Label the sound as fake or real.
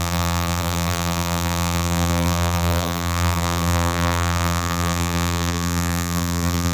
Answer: fake